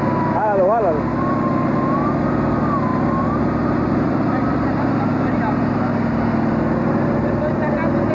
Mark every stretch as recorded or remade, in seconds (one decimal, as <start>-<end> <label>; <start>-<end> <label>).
0.0-2.9 recorded; 2.9-5.4 remade; 5.4-8.1 recorded